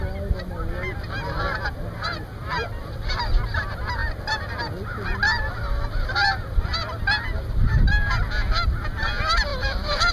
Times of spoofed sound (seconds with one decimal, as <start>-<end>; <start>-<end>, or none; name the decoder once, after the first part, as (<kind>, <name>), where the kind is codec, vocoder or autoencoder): 2.4-3.2 (vocoder, BigVGAN v2); 9.5-10.1